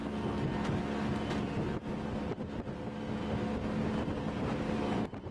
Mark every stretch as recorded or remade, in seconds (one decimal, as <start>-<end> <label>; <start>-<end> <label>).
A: 0.0-5.3 recorded